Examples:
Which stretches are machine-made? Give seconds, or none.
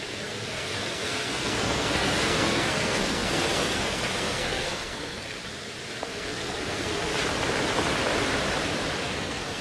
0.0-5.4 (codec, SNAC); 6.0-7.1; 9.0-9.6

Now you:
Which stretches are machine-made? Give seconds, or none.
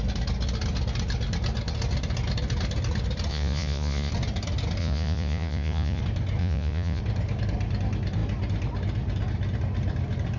3.3-4.1 (vocoder, Vocos); 4.8-6.0; 6.4-7.0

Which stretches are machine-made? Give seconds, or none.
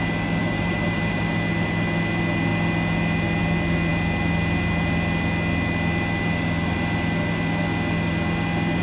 0.4-1.2 (vocoder, BigVGAN v2)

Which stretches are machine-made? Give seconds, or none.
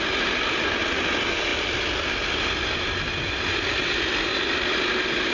none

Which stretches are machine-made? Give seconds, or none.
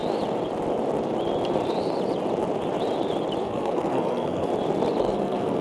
3.4-4.5 (codec, SNAC); 5.0-5.6